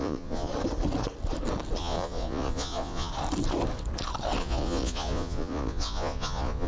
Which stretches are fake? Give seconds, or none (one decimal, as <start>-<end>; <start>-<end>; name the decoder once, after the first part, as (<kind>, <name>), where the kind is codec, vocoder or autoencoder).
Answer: 0.0-0.5 (vocoder, Vocos); 1.8-3.1; 4.4-6.7

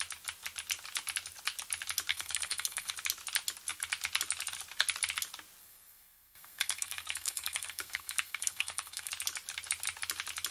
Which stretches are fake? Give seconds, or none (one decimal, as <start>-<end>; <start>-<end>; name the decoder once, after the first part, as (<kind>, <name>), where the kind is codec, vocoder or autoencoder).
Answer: 2.1-2.9 (codec, SNAC); 5.6-9.1

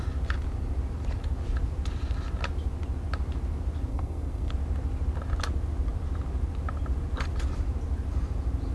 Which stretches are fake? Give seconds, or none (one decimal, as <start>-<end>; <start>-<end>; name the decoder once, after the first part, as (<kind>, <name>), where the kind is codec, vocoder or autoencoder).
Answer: 3.9-4.5 (codec, SNAC)

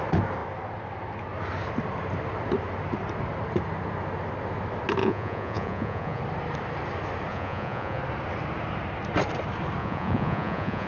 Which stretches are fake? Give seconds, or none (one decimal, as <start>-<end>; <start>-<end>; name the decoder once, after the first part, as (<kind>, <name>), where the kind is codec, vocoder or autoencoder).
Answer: 5.0-6.2 (vocoder, Vocos); 7.3-8.0; 9.8-10.9

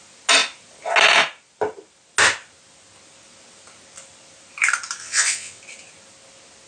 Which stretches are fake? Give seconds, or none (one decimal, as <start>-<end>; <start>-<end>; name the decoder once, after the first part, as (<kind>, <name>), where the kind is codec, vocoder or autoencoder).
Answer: 5.0-5.6 (vocoder, WaveNeXt)

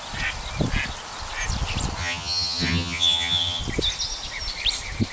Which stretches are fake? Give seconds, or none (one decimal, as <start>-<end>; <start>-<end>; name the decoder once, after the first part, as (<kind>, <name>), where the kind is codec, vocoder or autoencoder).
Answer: 2.0-3.6 (vocoder, HiFi-GAN)

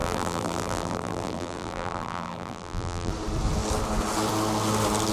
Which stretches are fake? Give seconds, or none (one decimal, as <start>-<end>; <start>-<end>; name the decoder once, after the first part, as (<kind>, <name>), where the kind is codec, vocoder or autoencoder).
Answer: 0.0-3.1 (vocoder, BigVGAN v2)

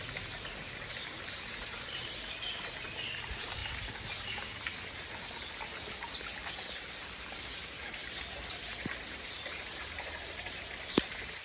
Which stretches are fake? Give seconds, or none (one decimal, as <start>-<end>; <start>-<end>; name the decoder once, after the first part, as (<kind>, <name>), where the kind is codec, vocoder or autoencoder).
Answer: 0.0-3.6 (vocoder, BigVGAN v2); 6.7-11.4